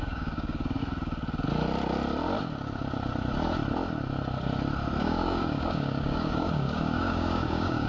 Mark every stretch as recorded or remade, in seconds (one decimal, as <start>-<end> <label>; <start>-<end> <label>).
0.0-0.8 remade; 0.8-5.0 recorded; 5.0-7.9 remade